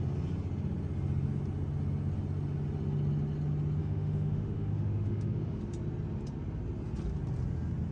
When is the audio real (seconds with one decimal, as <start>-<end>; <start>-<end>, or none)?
0.0-3.8; 5.6-7.9